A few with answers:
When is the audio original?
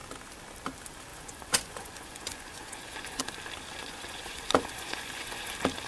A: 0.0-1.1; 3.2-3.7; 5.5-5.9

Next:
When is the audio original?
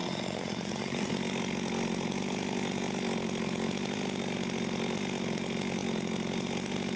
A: 1.1-7.0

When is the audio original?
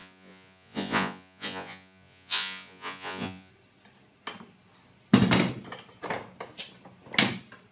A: 3.5-7.7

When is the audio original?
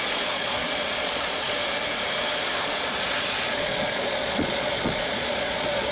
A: 1.6-2.4